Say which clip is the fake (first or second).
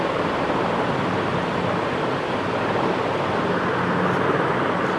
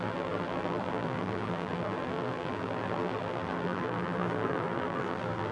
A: second